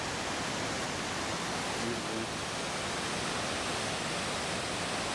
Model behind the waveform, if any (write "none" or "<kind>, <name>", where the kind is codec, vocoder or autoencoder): none